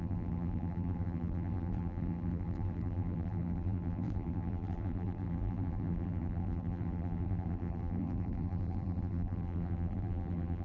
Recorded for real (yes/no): no